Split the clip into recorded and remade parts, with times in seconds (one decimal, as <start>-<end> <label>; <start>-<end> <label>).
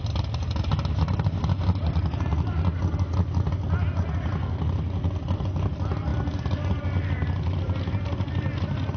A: 0.0-9.0 recorded